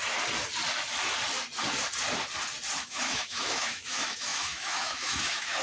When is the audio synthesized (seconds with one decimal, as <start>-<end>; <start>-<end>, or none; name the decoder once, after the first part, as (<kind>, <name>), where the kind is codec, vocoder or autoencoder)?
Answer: 2.8-5.6 (autoencoder, DAC-VAE)